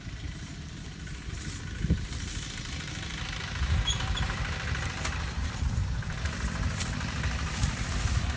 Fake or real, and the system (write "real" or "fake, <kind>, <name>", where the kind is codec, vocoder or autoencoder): fake, vocoder, BigVGAN v2